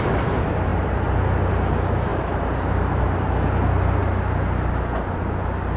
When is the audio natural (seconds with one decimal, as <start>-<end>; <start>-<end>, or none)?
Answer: 0.0-5.8